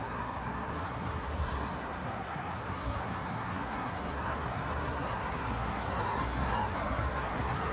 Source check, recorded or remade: remade